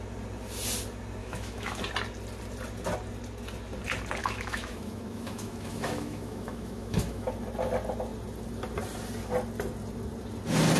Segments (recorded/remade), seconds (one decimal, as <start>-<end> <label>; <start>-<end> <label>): 0.0-1.2 recorded; 1.2-1.8 remade; 1.8-4.2 recorded; 4.2-7.3 remade; 7.3-10.8 recorded